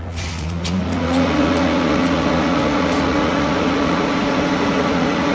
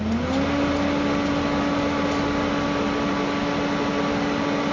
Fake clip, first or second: first